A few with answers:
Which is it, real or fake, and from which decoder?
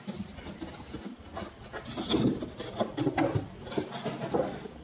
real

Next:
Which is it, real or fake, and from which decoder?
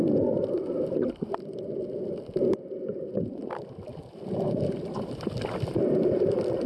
real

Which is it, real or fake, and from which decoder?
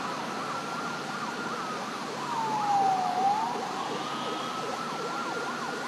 real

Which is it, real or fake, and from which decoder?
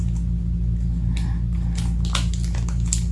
real